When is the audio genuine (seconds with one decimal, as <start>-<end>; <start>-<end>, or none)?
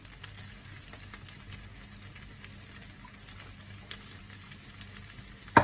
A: 0.0-5.6